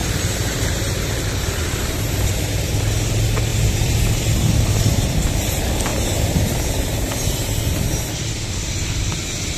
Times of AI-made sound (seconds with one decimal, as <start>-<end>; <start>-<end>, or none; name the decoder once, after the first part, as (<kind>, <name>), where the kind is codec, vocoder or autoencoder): 0.0-2.8 (vocoder, BigVGAN v2); 3.5-4.8

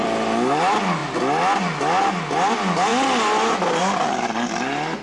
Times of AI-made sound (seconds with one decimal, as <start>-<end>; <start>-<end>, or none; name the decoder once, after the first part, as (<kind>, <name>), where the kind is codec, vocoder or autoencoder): none

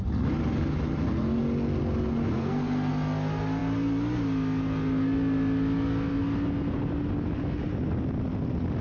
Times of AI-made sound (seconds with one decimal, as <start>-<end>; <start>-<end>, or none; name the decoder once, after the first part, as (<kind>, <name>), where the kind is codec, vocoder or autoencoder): 2.4-2.9 (codec, SNAC)

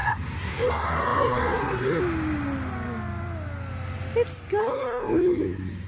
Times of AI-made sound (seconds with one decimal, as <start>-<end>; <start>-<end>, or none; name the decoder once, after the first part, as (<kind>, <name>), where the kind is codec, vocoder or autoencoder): 0.0-2.0 (codec, SNAC); 4.6-5.9

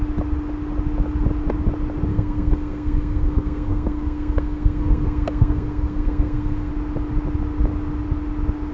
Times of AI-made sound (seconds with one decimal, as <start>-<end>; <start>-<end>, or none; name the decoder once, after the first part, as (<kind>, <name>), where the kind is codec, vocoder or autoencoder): 2.1-6.7 (codec, SNAC)

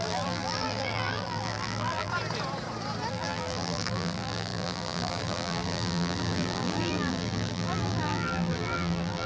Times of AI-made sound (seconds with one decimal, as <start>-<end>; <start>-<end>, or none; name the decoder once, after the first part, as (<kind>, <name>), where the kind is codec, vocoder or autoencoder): 0.0-2.1 (vocoder, BigVGAN v2); 3.1-9.3